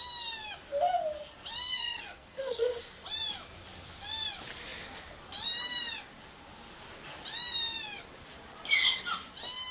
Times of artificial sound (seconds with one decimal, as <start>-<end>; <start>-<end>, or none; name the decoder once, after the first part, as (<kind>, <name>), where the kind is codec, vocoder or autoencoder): 1.6-2.8 (codec, SNAC)